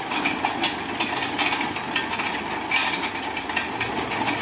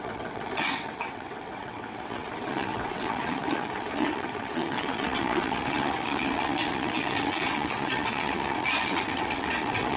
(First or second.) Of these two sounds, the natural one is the first